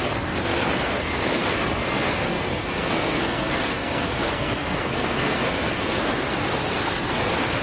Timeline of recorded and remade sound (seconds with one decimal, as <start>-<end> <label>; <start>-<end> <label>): 0.0-7.6 remade